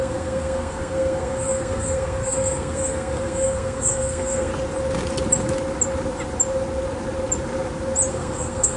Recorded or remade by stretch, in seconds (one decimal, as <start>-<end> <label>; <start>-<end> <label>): 0.0-4.5 remade; 4.5-8.1 recorded; 8.1-8.8 remade

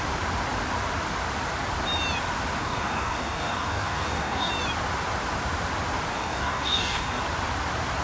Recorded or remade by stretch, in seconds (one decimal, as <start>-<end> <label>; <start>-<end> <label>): 0.0-2.6 recorded; 2.6-4.5 remade; 4.5-6.1 recorded; 6.1-7.2 remade; 7.2-8.0 recorded